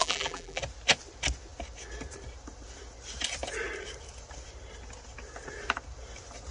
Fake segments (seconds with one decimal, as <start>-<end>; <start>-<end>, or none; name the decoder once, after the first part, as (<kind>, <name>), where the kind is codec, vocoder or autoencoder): 0.0-0.6 (vocoder, BigVGAN v2)

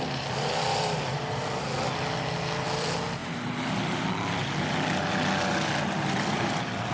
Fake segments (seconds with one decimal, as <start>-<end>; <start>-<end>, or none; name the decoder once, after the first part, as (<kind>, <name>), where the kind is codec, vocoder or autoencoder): 0.0-6.9 (vocoder, BigVGAN v2)

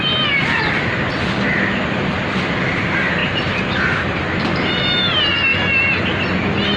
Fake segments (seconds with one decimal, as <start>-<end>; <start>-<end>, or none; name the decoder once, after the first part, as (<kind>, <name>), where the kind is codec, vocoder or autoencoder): 3.2-4.2 (vocoder, BigVGAN v2)

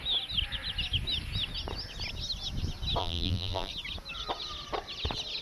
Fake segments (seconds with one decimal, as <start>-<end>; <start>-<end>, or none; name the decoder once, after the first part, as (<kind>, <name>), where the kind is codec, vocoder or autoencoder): 3.0-3.7 (vocoder, BigVGAN v2)

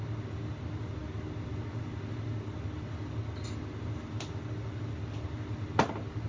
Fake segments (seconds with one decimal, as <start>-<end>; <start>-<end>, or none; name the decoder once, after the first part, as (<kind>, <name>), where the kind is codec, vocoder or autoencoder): none

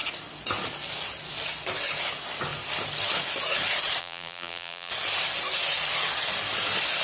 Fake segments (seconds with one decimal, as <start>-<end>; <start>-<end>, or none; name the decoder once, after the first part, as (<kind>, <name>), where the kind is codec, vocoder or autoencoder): 4.0-4.9 (vocoder, BigVGAN v2)

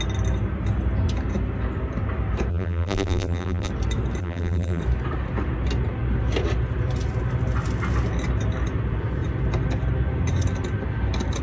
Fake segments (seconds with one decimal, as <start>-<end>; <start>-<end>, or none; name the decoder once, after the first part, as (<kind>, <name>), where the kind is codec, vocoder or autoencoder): 2.5-3.7 (vocoder, BigVGAN v2); 4.2-4.8